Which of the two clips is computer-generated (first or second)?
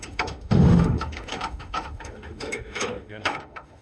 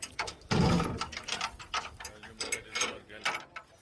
first